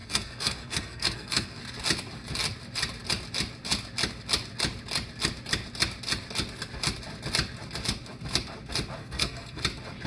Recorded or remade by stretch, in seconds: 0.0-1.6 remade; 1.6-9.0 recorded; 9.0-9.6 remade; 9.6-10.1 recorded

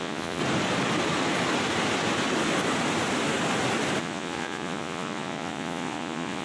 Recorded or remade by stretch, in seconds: 0.0-0.4 remade; 0.4-4.0 recorded; 4.0-6.4 remade

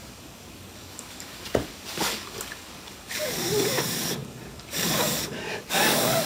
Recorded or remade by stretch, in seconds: 0.0-6.3 remade

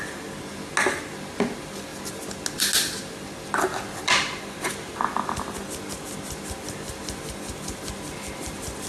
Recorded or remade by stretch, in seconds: 0.0-8.9 recorded